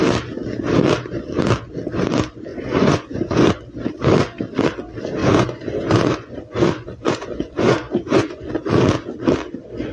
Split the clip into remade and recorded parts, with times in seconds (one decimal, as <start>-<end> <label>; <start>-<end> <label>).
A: 0.0-2.5 recorded; 2.5-3.5 remade; 3.5-5.2 recorded; 5.2-8.5 remade; 8.5-9.9 recorded